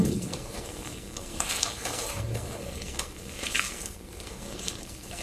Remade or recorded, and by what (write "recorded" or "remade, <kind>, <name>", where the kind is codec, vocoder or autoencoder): remade, codec, SNAC